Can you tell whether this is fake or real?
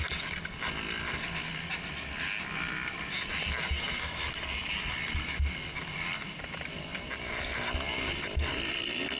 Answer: real